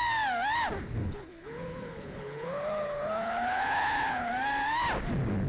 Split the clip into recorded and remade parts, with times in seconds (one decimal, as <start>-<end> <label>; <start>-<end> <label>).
0.0-1.0 recorded; 1.0-4.3 remade; 4.3-5.5 recorded